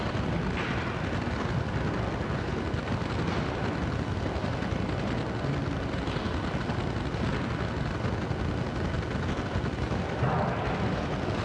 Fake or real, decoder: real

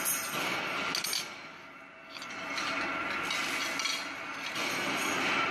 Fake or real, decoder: real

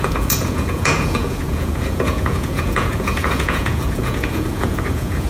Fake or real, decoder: fake, vocoder, Vocos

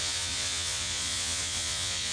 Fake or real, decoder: fake, vocoder, Vocos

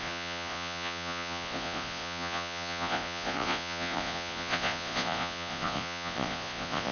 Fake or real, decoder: fake, vocoder, Vocos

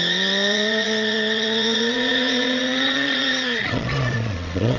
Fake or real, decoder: fake, vocoder, Vocos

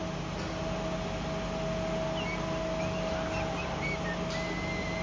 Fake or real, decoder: real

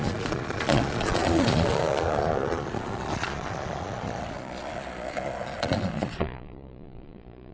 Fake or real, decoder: fake, vocoder, Vocos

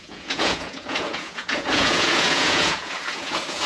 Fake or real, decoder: fake, vocoder, Vocos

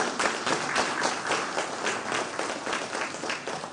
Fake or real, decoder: real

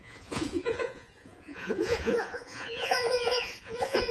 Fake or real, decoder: fake, vocoder, Vocos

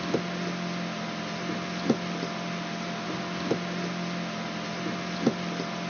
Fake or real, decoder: real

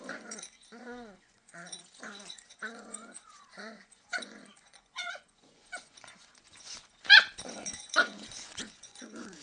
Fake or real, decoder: fake, vocoder, Vocos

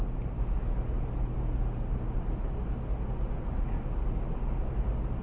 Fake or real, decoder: real